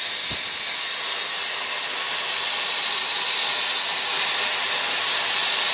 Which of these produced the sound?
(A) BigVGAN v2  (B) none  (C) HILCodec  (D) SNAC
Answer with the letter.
B